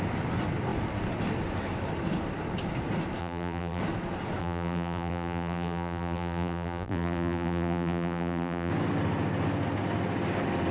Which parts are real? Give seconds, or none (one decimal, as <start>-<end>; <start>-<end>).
0.0-3.2; 3.8-4.4; 8.7-10.7